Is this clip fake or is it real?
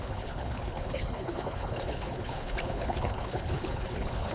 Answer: fake